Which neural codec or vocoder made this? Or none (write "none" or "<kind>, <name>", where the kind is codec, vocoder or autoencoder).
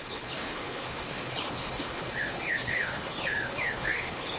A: codec, HILCodec